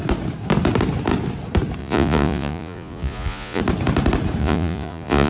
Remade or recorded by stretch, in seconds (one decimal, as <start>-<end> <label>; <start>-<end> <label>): 0.0-1.8 recorded; 1.8-3.6 remade; 3.6-4.4 recorded; 4.4-5.3 remade